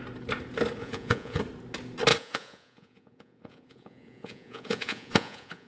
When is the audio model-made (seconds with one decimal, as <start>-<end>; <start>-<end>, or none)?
0.8-1.4; 2.1-5.7